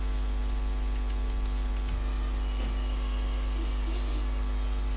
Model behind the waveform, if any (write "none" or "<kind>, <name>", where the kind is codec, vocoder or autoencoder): none